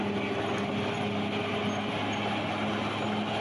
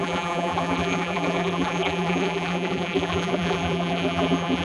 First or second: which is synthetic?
second